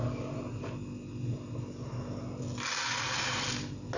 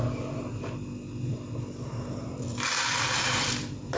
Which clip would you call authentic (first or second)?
first